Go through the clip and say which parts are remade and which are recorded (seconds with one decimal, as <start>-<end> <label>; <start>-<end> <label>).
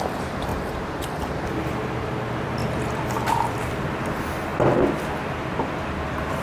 0.0-2.6 remade; 2.6-3.3 recorded; 3.3-4.5 remade; 4.5-5.2 recorded; 5.2-6.4 remade